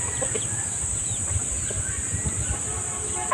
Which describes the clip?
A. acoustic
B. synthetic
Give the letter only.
A